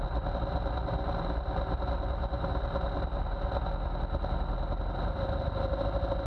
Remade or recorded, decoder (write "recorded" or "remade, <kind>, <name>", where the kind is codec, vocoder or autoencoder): recorded